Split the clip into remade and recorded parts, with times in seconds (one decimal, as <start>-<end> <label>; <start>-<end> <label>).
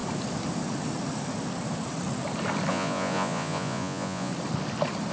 0.0-2.7 recorded; 2.7-4.3 remade; 4.3-5.1 recorded